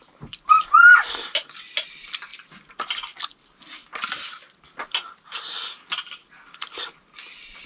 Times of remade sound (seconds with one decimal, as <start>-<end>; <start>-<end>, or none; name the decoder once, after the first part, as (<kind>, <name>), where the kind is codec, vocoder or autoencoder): 0.0-2.3 (vocoder, BigVGAN v2); 5.4-7.7